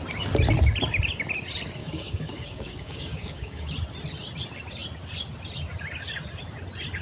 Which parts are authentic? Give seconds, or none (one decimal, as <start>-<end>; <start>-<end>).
0.0-1.8; 3.7-7.0